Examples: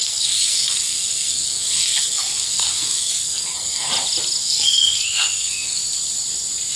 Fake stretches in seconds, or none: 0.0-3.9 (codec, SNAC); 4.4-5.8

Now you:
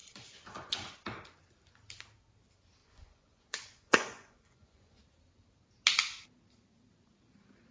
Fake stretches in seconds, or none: 0.0-1.0 (vocoder, Vocos); 2.8-5.0